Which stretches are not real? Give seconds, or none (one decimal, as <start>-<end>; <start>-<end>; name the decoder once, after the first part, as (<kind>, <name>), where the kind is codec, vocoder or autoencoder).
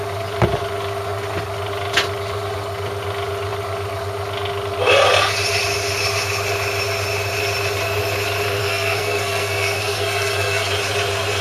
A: 8.6-10.7 (codec, SNAC)